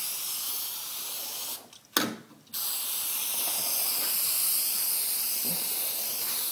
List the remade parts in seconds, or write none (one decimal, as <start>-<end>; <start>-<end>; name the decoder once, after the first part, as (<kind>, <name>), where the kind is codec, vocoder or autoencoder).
none